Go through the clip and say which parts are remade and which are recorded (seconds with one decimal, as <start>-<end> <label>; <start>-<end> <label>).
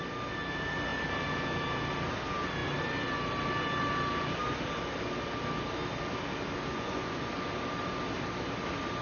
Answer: 0.0-6.7 recorded; 6.7-7.3 remade; 7.3-9.0 recorded